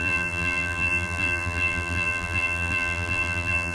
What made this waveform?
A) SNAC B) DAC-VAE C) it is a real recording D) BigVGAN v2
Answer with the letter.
D